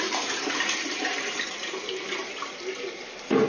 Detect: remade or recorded remade